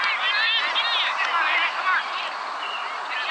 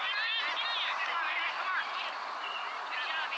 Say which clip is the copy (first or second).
second